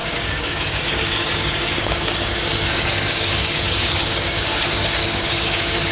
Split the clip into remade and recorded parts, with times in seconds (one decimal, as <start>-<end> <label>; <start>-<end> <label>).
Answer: 0.0-5.9 remade